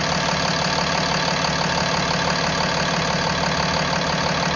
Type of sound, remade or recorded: recorded